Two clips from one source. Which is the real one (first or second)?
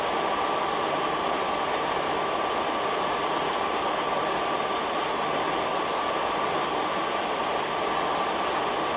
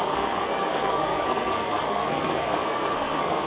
first